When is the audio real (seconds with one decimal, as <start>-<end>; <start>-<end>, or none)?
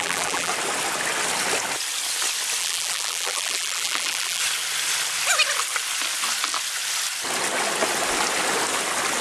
0.5-2.6; 4.4-9.2